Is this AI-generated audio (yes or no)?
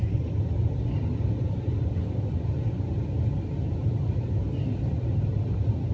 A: no